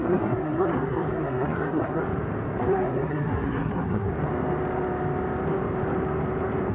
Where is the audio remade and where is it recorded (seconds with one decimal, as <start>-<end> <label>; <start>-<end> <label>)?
0.0-2.0 remade; 2.0-2.6 recorded; 2.6-4.1 remade; 4.1-6.7 recorded